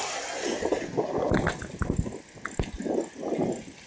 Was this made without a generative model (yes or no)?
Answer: yes